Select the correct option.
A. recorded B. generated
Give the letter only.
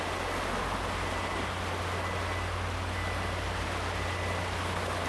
A